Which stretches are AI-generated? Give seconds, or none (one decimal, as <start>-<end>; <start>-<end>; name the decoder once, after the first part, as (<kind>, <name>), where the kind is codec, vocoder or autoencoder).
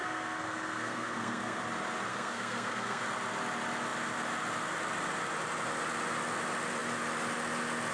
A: 0.0-1.6 (codec, SNAC); 2.1-3.0